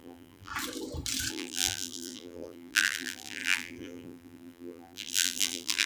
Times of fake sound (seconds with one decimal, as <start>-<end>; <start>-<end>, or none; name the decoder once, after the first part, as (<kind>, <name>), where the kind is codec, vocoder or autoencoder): 0.0-0.5 (vocoder, BigVGAN v2); 1.3-5.9